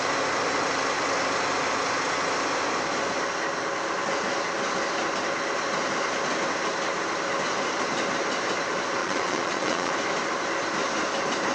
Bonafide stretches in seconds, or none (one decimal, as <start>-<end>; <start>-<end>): 0.0-9.0; 9.9-11.5